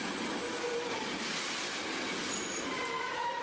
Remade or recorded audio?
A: recorded